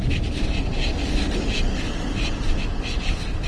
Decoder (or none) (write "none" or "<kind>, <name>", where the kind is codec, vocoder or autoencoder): none